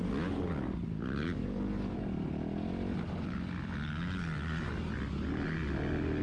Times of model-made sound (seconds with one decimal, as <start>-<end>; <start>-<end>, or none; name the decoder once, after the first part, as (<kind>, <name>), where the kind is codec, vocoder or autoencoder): 1.4-2.3 (vocoder, BigVGAN v2)

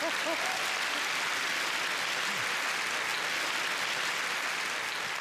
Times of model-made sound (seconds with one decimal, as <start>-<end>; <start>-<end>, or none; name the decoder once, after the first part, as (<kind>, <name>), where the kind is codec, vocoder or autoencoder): none

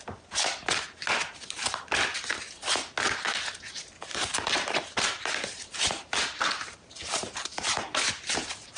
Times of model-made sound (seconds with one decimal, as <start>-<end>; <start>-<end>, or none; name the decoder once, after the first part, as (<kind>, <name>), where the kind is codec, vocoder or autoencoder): 4.1-8.8 (vocoder, BigVGAN v2)

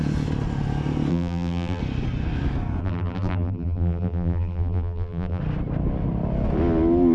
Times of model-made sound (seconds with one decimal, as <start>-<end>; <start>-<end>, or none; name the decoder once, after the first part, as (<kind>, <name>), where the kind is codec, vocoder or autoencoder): 1.1-1.8 (vocoder, BigVGAN v2); 2.8-5.4